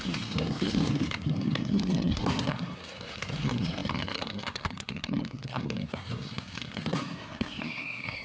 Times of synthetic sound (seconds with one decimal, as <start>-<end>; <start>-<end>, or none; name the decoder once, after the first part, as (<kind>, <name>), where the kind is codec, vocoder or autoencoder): 0.0-8.2 (codec, SNAC)